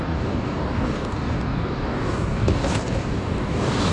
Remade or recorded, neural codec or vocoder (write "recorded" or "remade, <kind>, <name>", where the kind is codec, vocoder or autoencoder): remade, codec, DAC